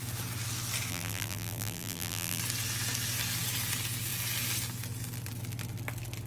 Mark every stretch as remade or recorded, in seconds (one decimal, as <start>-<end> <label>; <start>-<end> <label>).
0.0-0.9 recorded; 0.9-2.4 remade; 2.4-6.3 recorded